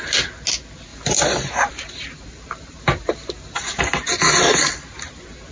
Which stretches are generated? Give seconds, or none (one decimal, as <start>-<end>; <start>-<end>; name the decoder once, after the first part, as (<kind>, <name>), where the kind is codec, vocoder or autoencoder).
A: 0.9-3.8 (vocoder, BigVGAN v2)